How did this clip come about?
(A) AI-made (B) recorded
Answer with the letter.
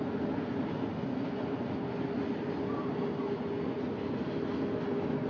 B